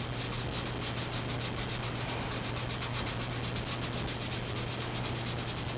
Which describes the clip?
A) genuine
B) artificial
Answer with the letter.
A